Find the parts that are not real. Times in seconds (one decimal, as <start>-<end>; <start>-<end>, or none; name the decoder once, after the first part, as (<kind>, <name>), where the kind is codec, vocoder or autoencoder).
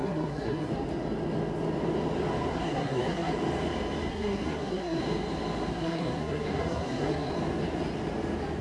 0.0-0.7 (codec, SNAC); 2.5-3.3; 4.1-5.0; 5.7-7.3